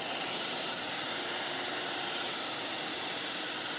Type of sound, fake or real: real